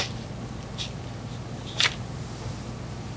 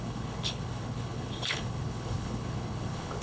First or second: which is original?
first